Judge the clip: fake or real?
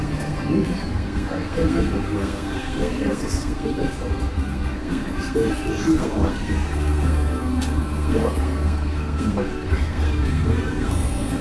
fake